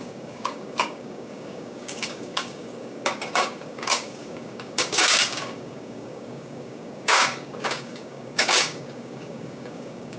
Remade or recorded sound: remade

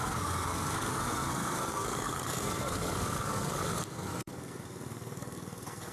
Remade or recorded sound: remade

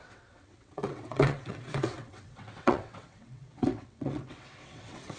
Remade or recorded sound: remade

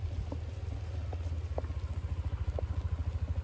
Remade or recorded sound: recorded